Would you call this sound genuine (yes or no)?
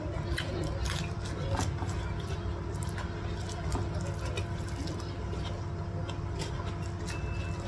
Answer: yes